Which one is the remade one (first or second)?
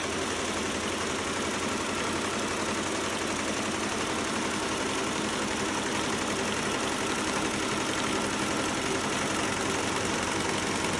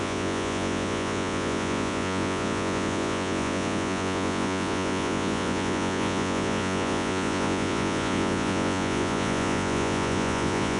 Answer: second